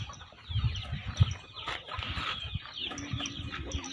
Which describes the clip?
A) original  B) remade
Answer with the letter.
A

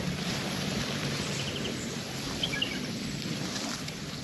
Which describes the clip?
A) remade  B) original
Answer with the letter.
A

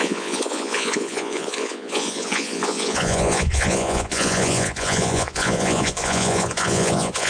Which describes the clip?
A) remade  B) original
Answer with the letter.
A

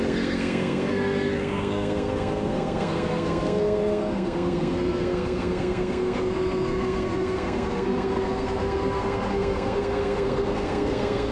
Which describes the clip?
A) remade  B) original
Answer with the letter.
A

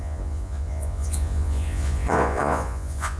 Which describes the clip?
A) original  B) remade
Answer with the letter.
B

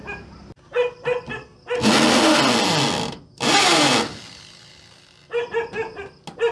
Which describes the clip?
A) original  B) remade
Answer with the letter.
A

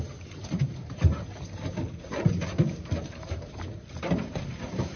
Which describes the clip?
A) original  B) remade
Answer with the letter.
B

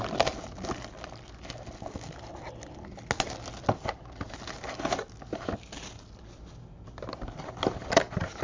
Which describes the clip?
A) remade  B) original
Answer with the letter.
B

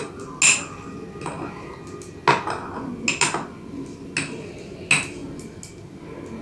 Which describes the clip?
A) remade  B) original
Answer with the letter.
B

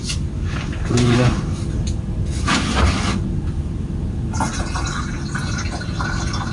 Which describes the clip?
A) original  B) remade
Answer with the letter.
A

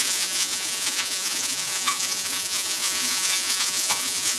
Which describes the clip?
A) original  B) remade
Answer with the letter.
B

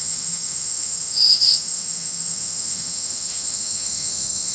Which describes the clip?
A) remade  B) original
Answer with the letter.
A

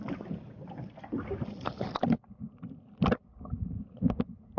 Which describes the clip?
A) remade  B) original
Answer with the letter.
B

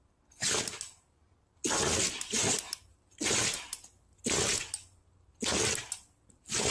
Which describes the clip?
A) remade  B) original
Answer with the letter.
B